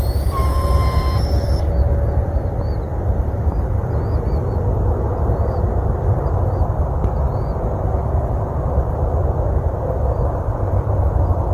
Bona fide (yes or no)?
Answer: no